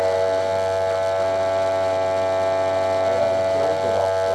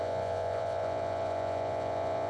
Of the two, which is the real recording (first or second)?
first